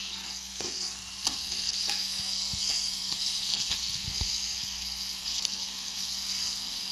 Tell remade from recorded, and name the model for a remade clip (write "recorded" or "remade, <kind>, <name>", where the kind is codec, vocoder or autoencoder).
remade, codec, SNAC